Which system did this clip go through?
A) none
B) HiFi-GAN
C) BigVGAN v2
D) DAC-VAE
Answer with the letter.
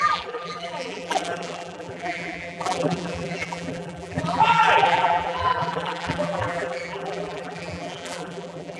C